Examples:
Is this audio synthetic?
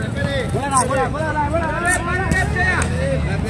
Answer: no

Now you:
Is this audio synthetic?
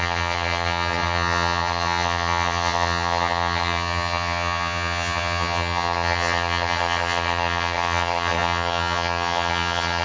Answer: yes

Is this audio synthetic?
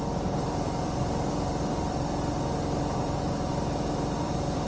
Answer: yes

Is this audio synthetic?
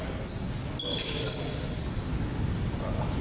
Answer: no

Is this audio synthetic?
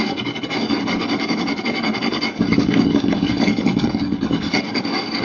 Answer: yes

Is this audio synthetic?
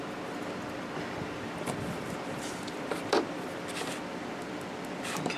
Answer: no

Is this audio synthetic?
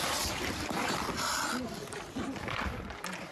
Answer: no